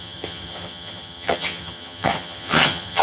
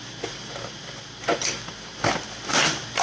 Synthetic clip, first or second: first